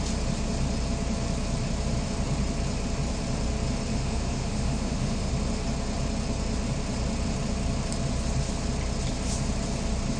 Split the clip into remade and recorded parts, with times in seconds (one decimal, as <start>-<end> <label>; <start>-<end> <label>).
0.0-3.9 recorded; 3.9-5.3 remade; 5.3-10.2 recorded